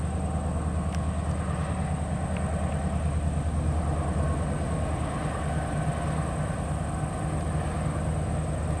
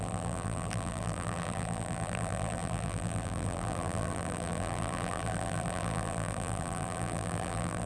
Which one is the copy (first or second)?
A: second